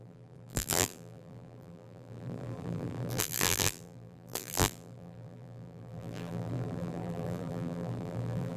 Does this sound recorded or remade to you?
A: remade